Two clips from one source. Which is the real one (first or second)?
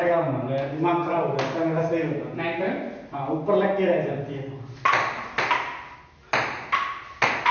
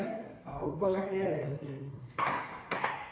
first